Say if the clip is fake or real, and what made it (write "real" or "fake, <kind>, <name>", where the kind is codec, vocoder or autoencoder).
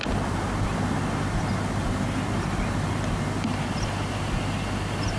real